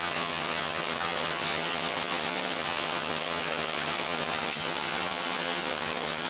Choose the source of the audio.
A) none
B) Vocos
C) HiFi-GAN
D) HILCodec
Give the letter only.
C